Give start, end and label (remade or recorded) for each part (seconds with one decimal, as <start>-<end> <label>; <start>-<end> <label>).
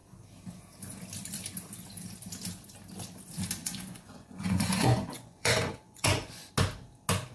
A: 0.0-3.6 recorded; 3.6-6.5 remade; 6.5-7.3 recorded